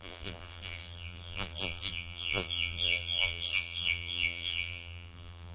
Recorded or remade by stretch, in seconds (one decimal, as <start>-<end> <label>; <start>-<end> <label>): 0.0-5.5 remade